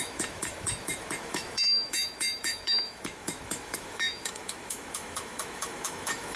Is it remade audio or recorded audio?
remade